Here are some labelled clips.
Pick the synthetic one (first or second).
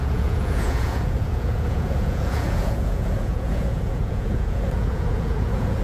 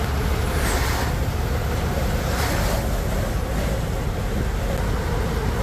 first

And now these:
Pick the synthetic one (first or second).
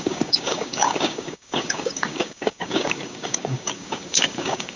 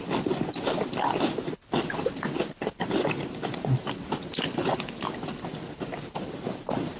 first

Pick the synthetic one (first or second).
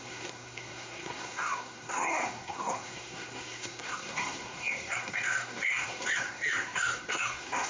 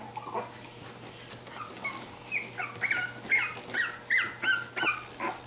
first